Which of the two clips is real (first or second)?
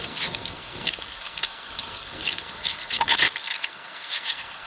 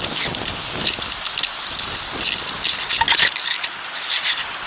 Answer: second